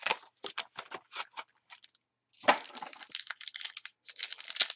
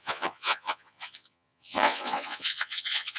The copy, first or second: second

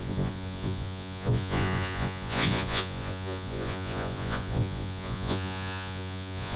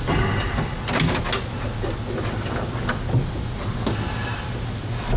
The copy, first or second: first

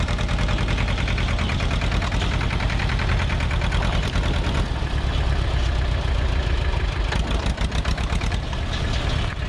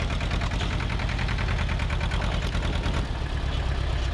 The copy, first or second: first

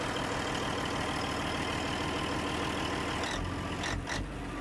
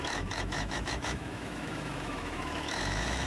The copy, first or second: second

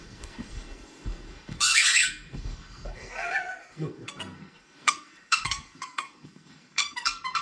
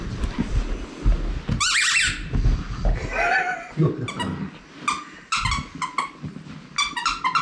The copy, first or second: first